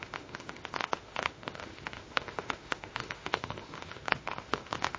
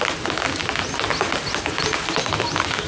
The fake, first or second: first